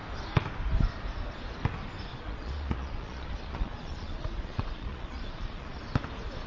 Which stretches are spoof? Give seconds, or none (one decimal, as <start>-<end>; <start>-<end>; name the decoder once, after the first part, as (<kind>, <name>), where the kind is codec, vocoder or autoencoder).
2.1-5.8 (vocoder, Vocos)

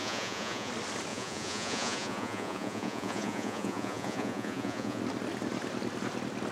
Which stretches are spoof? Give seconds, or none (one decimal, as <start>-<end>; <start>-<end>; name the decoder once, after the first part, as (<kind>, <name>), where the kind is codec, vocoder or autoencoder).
0.0-0.7 (vocoder, Vocos); 1.1-5.0